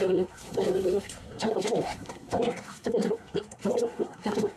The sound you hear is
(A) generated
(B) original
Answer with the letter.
A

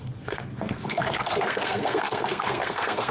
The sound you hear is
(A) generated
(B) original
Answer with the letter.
A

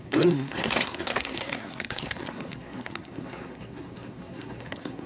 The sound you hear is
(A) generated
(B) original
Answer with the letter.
A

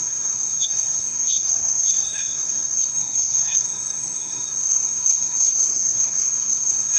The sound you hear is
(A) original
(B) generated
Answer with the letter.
B